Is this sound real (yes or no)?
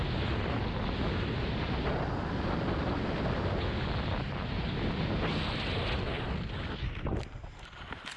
yes